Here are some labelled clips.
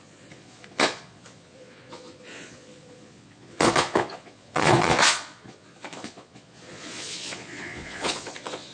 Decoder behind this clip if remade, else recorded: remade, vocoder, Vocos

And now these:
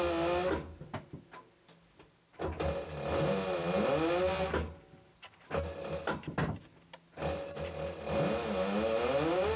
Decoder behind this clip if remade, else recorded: recorded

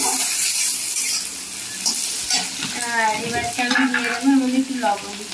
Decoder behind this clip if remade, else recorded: recorded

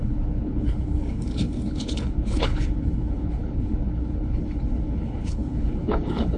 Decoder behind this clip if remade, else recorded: remade, codec, HILCodec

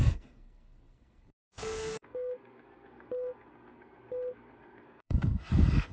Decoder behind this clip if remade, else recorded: remade, codec, SNAC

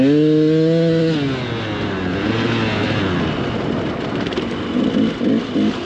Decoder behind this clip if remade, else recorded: recorded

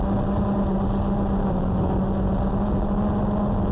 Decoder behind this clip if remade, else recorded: recorded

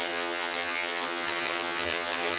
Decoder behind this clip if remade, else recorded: remade, vocoder, HiFi-GAN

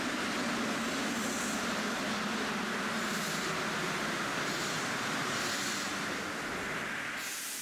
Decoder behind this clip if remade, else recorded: recorded